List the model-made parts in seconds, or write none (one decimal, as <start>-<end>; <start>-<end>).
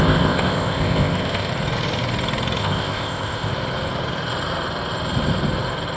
0.0-1.5; 2.6-3.5